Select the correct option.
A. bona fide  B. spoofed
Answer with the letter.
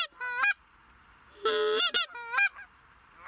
A